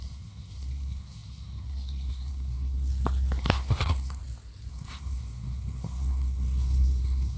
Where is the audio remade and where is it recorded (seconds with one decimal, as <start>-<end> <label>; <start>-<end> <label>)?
0.0-2.9 remade; 2.9-3.4 recorded; 3.4-4.2 remade; 4.2-4.7 recorded; 4.7-7.4 remade